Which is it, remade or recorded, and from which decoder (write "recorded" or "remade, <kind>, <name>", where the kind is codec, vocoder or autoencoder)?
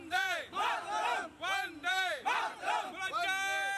recorded